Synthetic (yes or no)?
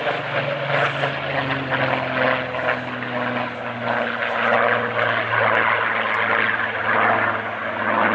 no